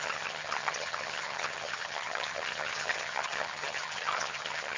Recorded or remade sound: remade